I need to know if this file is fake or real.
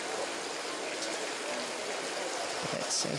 real